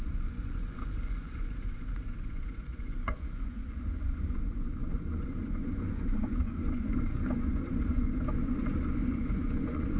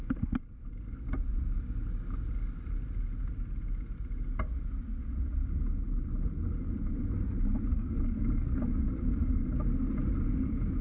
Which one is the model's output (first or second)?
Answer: first